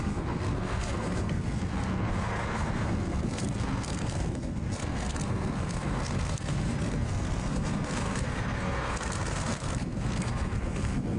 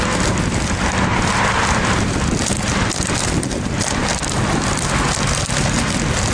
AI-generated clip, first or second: first